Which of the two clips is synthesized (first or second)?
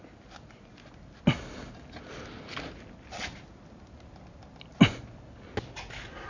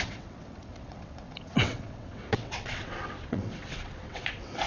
second